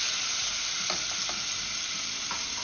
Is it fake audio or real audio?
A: real